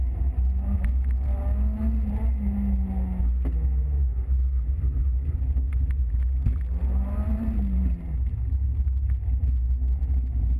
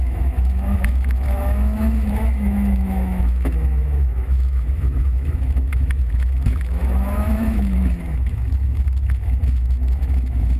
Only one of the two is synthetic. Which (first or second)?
second